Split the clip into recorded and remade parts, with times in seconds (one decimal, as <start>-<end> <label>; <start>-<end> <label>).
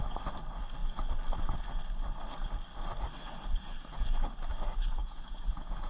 0.0-5.0 recorded; 5.0-5.9 remade